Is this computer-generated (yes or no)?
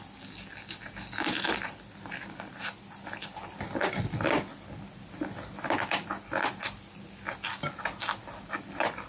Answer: no